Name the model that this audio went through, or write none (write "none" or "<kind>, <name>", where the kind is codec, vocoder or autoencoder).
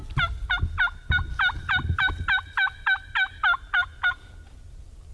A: none